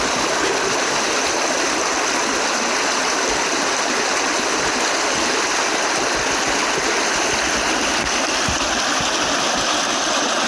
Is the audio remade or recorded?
recorded